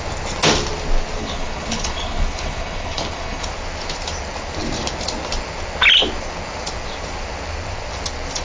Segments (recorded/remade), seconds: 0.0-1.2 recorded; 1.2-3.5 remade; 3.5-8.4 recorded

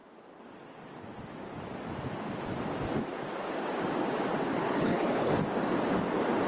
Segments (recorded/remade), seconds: 0.0-4.5 recorded; 4.5-5.3 remade; 5.3-6.5 recorded

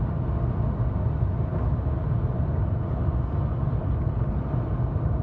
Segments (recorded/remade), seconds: 0.0-3.8 recorded; 3.8-4.4 remade; 4.4-5.2 recorded

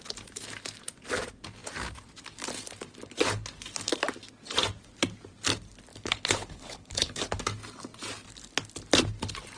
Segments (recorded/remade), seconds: 0.0-5.9 recorded; 5.9-7.2 remade; 7.2-9.6 recorded

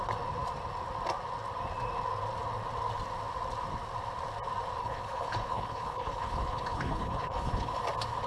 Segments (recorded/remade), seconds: 0.0-4.8 recorded; 4.8-7.8 remade; 7.8-8.3 recorded

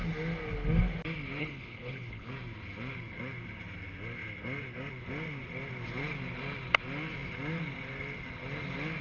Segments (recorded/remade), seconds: 0.0-1.4 recorded; 1.4-2.3 remade; 2.3-9.0 recorded

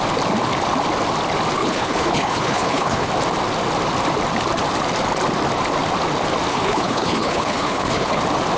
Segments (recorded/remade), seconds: 0.0-1.6 recorded; 1.6-3.1 remade; 3.1-6.5 recorded; 6.5-8.2 remade; 8.2-8.6 recorded